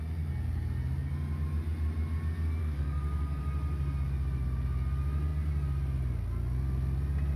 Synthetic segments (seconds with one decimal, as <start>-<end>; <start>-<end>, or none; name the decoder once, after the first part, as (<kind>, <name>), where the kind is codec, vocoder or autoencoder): 2.6-3.4 (codec, SNAC)